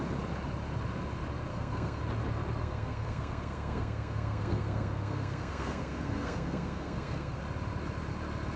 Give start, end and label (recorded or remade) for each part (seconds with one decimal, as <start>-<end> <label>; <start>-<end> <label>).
0.0-1.5 recorded; 1.5-2.0 remade; 2.0-2.6 recorded; 2.6-7.4 remade; 7.4-8.6 recorded